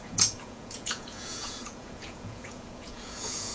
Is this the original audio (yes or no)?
no